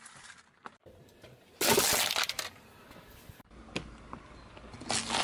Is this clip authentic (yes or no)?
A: yes